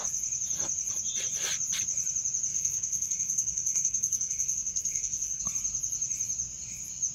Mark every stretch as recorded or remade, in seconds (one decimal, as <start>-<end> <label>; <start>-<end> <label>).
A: 0.0-2.5 recorded; 2.5-5.4 remade; 5.4-7.1 recorded